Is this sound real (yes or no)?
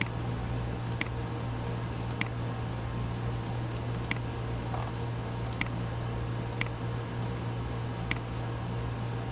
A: yes